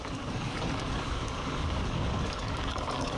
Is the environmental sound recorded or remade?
remade